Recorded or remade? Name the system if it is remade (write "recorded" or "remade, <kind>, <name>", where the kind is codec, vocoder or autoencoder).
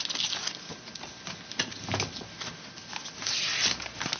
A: recorded